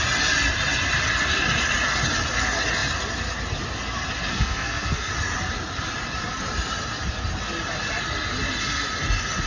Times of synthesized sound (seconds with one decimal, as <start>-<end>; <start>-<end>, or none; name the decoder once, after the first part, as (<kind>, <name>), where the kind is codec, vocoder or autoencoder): 4.3-5.1 (codec, SNAC)